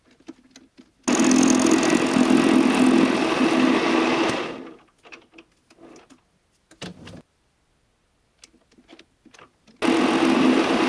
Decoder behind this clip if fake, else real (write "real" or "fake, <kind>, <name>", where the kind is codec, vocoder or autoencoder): real